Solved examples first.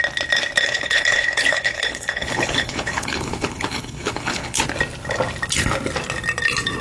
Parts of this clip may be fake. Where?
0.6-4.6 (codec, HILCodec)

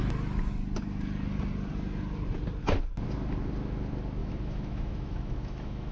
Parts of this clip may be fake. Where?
4.2-5.9 (autoencoder, DAC-VAE)

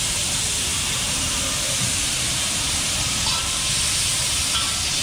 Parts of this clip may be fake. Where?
0.7-3.7 (vocoder, BigVGAN v2)

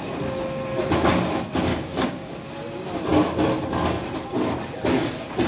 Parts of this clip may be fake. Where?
1.7-2.5 (codec, DAC)

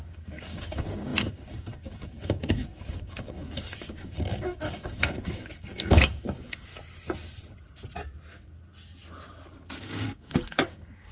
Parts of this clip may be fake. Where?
0.0-6.7 (codec, DAC); 9.8-11.1

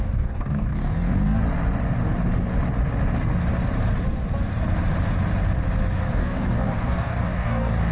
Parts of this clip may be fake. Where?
0.0-1.4 (codec, DAC); 6.1-7.9